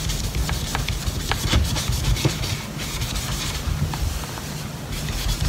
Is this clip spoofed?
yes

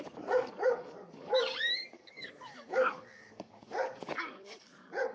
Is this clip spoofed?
yes